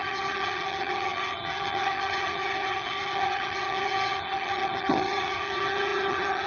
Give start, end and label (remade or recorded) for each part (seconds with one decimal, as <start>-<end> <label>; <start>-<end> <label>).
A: 0.0-6.5 remade